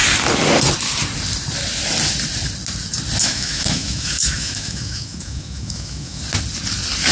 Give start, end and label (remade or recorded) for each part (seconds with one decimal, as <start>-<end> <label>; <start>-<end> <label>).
0.0-3.2 recorded; 3.2-6.2 remade; 6.2-7.1 recorded